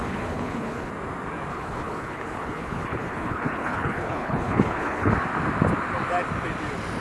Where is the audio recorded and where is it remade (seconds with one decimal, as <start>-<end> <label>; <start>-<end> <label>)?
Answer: 0.0-0.9 remade; 0.9-1.5 recorded; 1.5-5.1 remade; 5.1-7.0 recorded